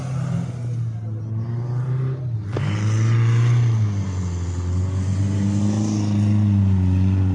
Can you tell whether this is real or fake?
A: real